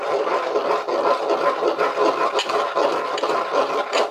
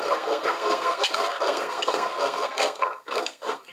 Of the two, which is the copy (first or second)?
second